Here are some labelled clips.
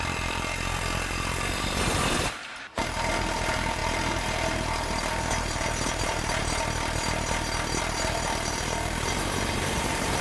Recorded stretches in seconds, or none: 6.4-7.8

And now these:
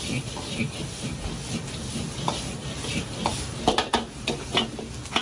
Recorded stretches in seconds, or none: 0.0-2.6; 3.9-5.2